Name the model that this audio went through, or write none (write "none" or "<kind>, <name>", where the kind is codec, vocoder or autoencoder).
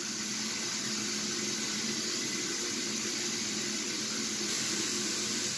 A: none